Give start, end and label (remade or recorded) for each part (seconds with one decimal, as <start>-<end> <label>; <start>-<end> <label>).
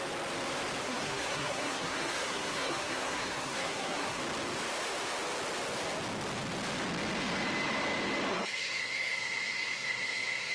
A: 0.0-0.8 recorded; 0.8-4.2 remade; 4.2-8.3 recorded; 8.3-10.5 remade